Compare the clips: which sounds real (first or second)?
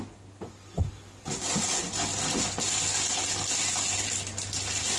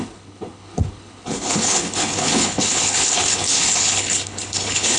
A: first